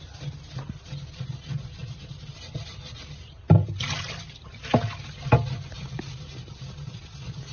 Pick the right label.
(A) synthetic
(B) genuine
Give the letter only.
B